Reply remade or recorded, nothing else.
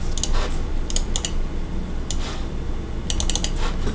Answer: recorded